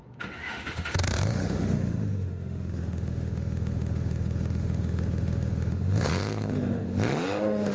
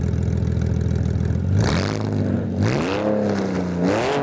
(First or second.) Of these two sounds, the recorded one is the second